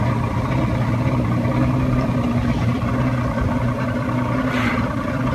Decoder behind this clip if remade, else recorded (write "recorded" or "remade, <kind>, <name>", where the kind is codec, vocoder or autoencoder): recorded